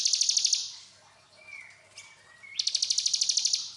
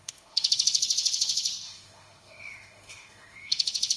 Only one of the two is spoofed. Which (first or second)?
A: second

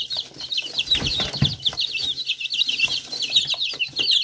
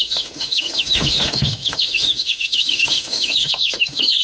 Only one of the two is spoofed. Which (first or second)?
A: second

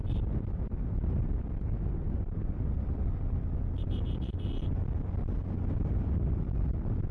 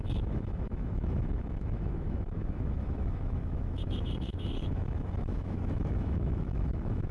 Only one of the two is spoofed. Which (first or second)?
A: second